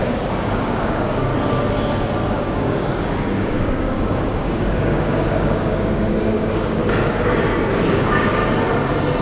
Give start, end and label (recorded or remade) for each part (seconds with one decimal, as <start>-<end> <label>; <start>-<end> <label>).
0.0-1.3 remade; 1.3-2.3 recorded; 2.3-6.8 remade; 6.8-7.9 recorded; 7.9-8.4 remade; 8.4-9.2 recorded